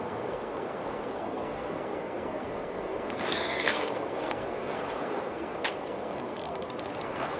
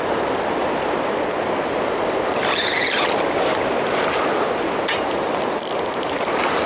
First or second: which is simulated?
first